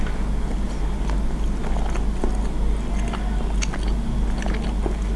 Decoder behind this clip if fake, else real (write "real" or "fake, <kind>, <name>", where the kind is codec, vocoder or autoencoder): real